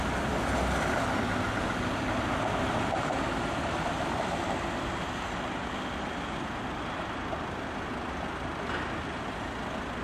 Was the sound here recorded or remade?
recorded